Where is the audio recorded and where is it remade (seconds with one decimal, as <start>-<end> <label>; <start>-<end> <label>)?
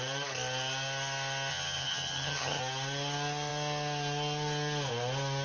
0.0-1.5 recorded; 1.5-2.6 remade; 2.6-5.4 recorded